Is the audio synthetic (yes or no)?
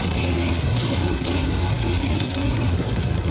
yes